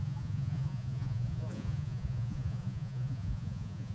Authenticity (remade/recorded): remade